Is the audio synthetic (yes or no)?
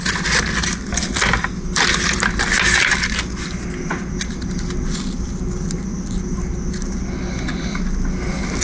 no